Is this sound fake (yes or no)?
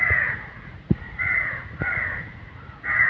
yes